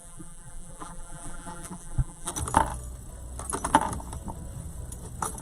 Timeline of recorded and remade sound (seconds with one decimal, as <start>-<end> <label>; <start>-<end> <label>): 0.0-2.3 remade; 2.3-5.4 recorded